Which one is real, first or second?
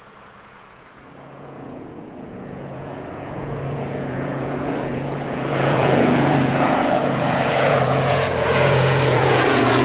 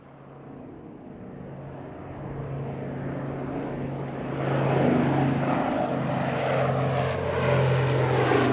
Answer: second